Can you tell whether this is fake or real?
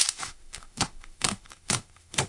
fake